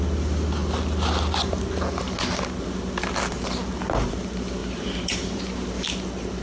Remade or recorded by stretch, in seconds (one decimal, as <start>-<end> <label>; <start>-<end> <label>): 0.0-4.6 recorded; 4.6-5.4 remade; 5.4-6.4 recorded